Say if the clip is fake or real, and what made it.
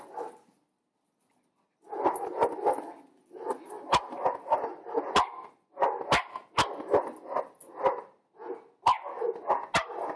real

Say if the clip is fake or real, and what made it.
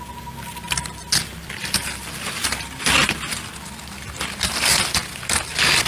real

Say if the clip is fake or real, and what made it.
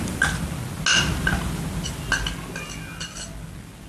real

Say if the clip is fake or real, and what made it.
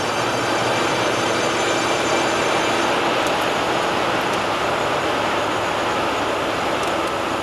real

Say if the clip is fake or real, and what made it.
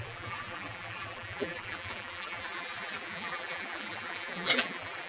fake, vocoder, BigVGAN v2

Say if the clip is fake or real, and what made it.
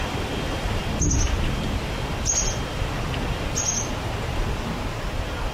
real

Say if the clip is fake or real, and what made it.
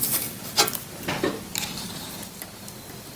real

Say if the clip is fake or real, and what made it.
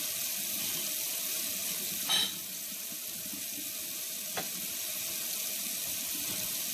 real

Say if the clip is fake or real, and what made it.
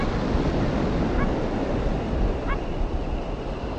real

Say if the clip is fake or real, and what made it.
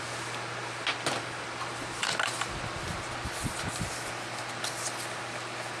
real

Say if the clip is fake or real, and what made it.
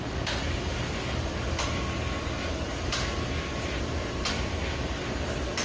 real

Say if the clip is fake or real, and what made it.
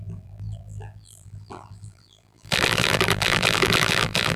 fake, vocoder, BigVGAN v2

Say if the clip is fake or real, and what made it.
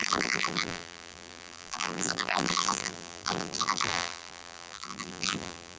fake, vocoder, BigVGAN v2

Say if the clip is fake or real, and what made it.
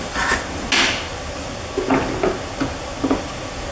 real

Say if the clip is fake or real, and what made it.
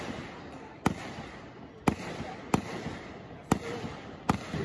real